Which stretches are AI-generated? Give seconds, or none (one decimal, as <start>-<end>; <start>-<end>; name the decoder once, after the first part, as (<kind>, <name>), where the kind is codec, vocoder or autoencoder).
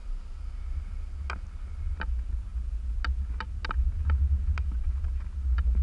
none